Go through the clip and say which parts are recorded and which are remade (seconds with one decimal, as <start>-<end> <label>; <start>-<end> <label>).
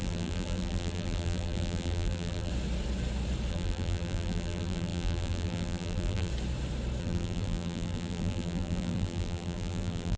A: 0.0-2.5 remade; 2.5-3.5 recorded; 3.5-6.3 remade; 6.3-7.0 recorded; 7.0-10.2 remade